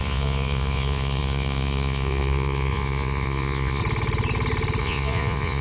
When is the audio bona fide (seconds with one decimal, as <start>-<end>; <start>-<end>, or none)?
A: 3.8-4.8